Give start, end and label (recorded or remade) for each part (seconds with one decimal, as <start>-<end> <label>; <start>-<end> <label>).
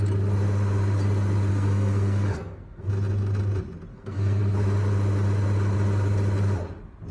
0.0-1.5 recorded; 1.5-2.9 remade; 2.9-3.9 recorded; 3.9-4.4 remade; 4.4-7.1 recorded